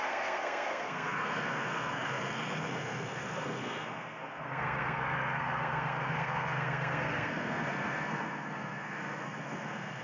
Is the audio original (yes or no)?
no